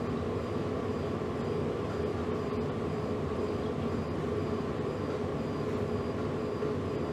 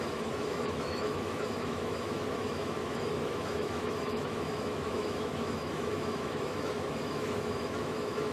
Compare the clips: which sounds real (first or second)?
first